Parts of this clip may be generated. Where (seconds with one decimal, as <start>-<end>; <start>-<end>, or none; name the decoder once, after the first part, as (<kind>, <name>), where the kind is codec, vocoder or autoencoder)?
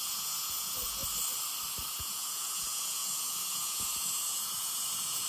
0.0-1.0 (vocoder, Vocos); 1.9-5.3